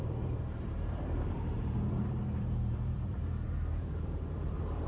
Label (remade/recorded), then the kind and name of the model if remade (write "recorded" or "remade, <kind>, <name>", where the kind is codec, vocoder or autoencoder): remade, vocoder, BigVGAN v2